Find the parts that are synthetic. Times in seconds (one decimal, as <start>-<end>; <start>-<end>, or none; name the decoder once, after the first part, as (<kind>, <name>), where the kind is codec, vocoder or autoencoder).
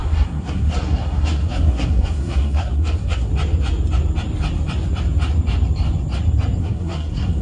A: 0.0-3.3 (codec, SNAC); 6.6-7.4